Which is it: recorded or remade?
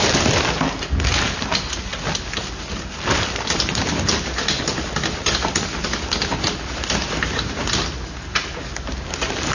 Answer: recorded